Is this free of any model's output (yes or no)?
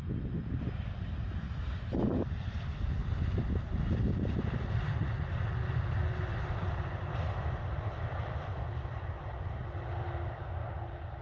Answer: yes